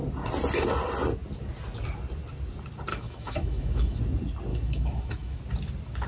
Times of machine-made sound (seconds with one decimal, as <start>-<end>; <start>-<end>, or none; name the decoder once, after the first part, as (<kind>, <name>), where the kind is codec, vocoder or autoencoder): 2.9-4.0 (autoencoder, DAC-VAE); 4.5-5.4